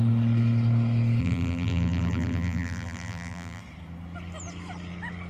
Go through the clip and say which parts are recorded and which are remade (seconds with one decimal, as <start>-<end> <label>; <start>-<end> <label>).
0.0-1.2 recorded; 1.2-3.6 remade; 3.6-5.3 recorded